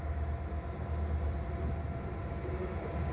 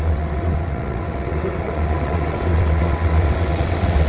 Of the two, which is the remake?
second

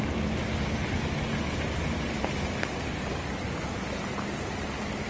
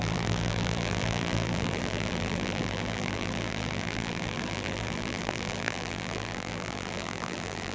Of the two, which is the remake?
second